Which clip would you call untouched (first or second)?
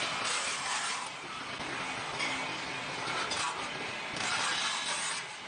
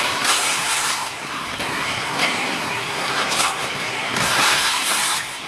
first